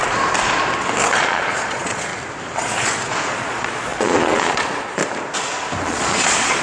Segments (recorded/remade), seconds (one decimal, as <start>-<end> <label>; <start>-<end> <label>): 0.0-1.2 recorded; 1.2-2.1 remade; 2.1-3.3 recorded; 3.3-5.0 remade; 5.0-5.8 recorded; 5.8-6.6 remade